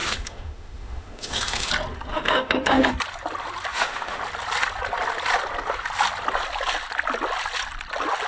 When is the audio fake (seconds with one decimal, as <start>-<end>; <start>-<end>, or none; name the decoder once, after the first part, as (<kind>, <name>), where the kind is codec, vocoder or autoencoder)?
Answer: 0.0-1.7 (autoencoder, DAC-VAE); 2.1-2.9; 3.7-4.2